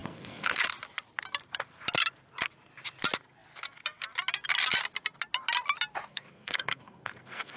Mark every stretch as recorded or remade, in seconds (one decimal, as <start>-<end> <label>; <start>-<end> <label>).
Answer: 0.0-0.6 remade; 0.6-6.1 recorded; 6.1-7.6 remade

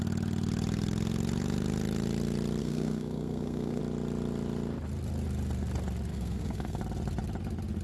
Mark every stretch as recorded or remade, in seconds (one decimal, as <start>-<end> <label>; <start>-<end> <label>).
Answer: 0.0-2.6 recorded; 2.6-3.8 remade; 3.8-6.1 recorded; 6.1-6.8 remade; 6.8-7.8 recorded

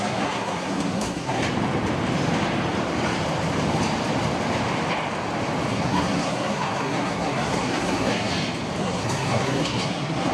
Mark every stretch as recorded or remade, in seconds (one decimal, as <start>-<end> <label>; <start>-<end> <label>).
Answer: 0.0-1.4 remade; 1.4-5.7 recorded; 5.7-8.3 remade; 8.3-8.8 recorded; 8.8-10.3 remade